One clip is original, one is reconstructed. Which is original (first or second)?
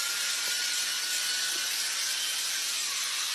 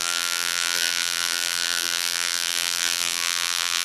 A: first